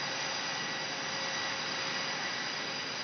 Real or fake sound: real